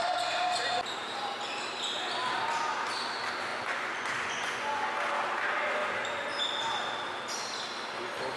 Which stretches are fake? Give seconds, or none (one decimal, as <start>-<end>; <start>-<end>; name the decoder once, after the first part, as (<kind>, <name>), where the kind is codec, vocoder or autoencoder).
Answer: 3.5-4.9 (vocoder, Vocos)